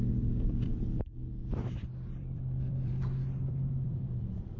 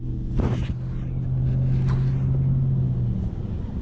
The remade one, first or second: first